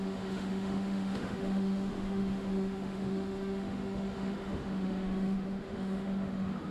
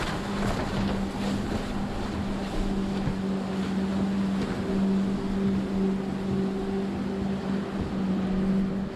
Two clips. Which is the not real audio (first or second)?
first